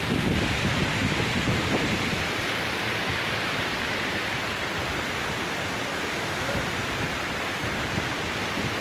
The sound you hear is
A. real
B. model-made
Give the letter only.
B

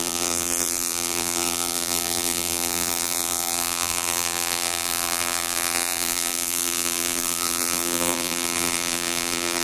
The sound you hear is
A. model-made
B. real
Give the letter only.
A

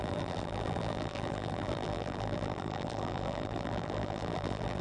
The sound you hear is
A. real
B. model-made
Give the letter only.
B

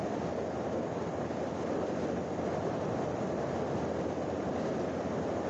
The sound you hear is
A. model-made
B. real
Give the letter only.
B